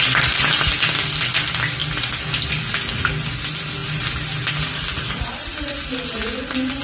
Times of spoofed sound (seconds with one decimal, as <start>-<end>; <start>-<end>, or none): none